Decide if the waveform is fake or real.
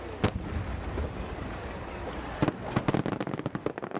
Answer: real